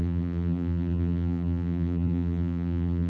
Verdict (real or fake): fake